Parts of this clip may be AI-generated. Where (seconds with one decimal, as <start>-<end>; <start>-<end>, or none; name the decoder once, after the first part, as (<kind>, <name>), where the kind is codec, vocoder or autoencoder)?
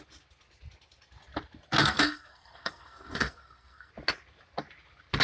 1.8-3.9 (codec, SNAC)